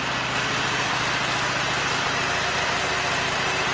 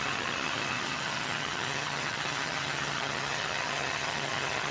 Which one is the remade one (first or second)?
second